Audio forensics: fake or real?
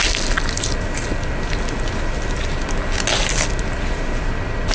real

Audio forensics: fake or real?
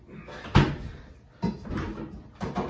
real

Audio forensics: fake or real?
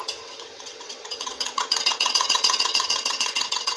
fake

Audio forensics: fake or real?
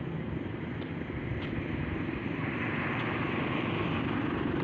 real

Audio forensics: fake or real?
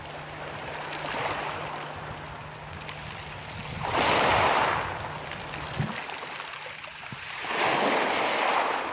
real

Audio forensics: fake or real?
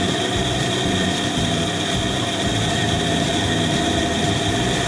fake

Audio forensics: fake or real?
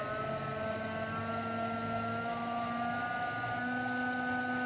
real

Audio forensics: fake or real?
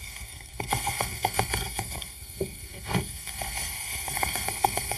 fake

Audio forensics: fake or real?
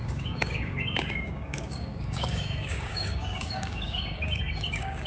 fake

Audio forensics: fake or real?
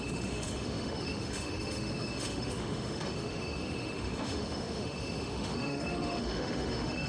fake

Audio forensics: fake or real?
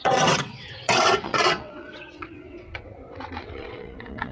fake